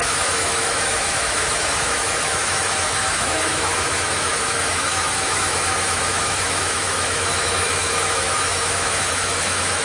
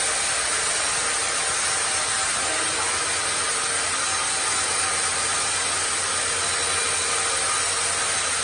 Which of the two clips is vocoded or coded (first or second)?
first